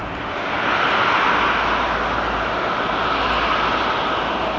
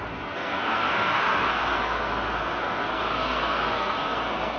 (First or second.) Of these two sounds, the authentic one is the first